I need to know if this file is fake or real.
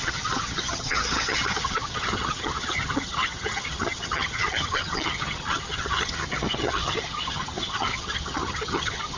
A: fake